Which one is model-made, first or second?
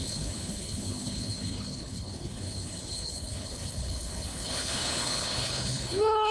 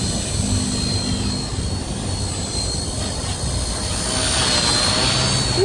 first